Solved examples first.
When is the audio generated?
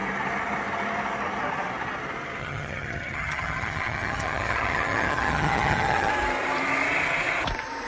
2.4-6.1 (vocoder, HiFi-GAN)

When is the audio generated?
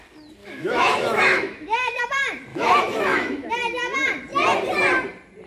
0.4-2.0 (autoencoder, DAC-VAE); 2.5-3.5